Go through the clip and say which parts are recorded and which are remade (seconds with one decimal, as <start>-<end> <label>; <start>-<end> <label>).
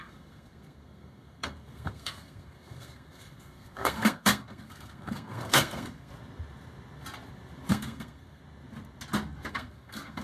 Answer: 0.0-6.1 remade; 6.1-7.7 recorded; 7.7-8.4 remade; 8.4-9.5 recorded; 9.5-10.2 remade